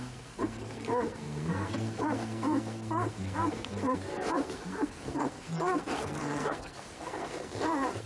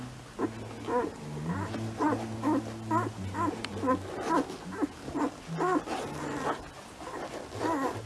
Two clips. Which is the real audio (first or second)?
second